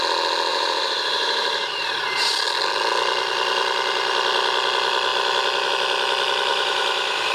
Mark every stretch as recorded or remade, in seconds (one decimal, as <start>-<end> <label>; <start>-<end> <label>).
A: 0.0-0.5 recorded; 0.5-2.3 remade; 2.3-6.5 recorded; 6.5-7.3 remade